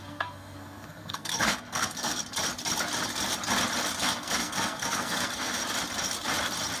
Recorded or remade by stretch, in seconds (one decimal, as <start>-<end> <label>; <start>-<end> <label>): 0.0-2.2 remade; 2.2-4.0 recorded; 4.0-5.6 remade; 5.6-6.8 recorded